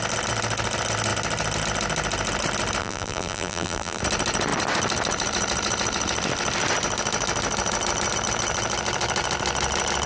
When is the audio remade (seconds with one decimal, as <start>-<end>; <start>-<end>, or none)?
2.8-4.0